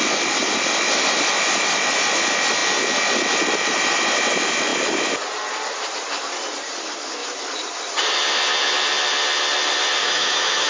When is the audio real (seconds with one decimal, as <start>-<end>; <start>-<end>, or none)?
0.0-10.0